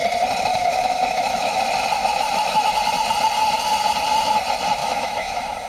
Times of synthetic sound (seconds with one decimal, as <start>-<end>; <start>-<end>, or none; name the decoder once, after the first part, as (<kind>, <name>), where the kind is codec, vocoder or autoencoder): 0.5-1.6 (autoencoder, DAC-VAE); 2.0-2.7; 4.8-5.7